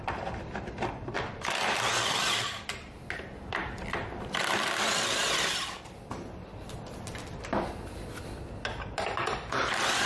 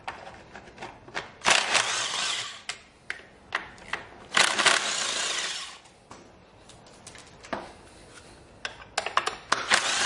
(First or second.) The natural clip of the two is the second